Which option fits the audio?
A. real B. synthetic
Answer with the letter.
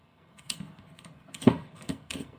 B